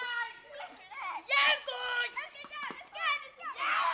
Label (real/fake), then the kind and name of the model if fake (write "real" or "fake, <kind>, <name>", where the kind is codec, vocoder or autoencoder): real